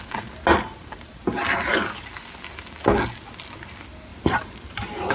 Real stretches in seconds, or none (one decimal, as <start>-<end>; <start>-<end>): 0.0-4.1